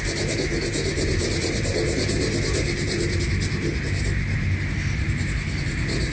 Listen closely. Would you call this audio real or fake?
real